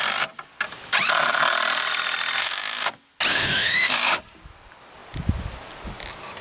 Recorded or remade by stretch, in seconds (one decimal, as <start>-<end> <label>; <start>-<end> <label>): 0.0-2.4 recorded; 2.4-2.9 remade; 2.9-3.3 recorded; 3.3-4.2 remade; 4.2-6.4 recorded

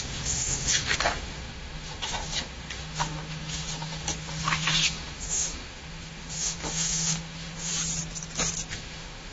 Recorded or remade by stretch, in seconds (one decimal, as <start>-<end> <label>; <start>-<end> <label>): 0.0-7.7 remade; 7.7-8.7 recorded; 8.7-9.3 remade